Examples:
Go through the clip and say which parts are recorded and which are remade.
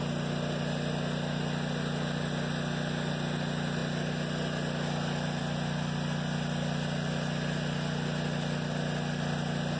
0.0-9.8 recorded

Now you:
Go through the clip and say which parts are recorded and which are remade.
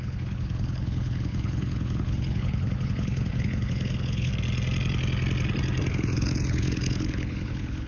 0.0-4.3 remade; 4.3-5.9 recorded; 5.9-7.9 remade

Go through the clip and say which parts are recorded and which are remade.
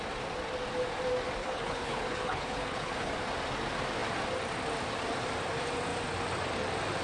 0.0-1.4 recorded; 1.4-3.1 remade; 3.1-7.0 recorded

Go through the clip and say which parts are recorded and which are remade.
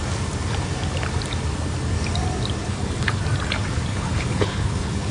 0.0-2.7 recorded; 2.7-3.2 remade; 3.2-3.9 recorded; 3.9-5.1 remade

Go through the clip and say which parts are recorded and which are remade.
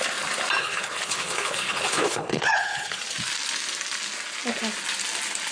0.0-0.6 recorded; 0.6-3.0 remade; 3.0-5.5 recorded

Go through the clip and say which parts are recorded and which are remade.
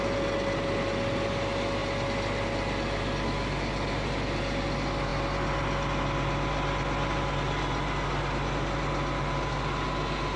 0.0-10.4 recorded